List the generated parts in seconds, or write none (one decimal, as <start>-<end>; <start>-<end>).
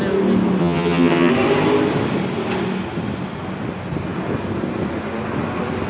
0.6-1.3